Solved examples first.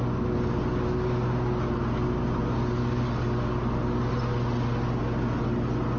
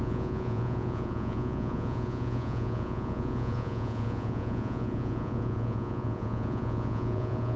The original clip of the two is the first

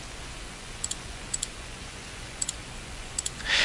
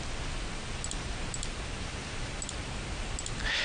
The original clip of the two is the second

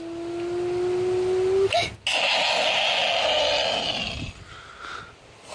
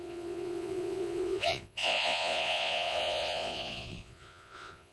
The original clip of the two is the first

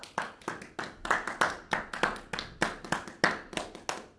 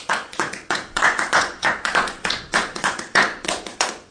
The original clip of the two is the first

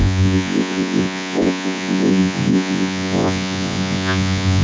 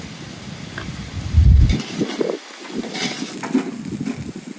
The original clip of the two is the second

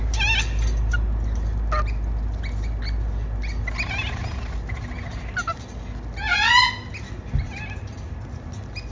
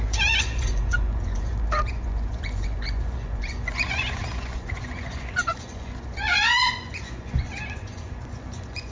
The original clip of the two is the first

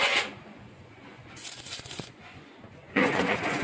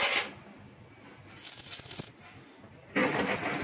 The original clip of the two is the second